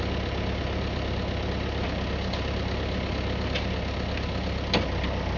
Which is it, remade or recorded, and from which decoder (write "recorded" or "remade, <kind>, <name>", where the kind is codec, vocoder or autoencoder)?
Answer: recorded